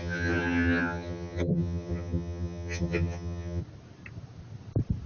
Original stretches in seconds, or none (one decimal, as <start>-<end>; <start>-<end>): 3.6-5.1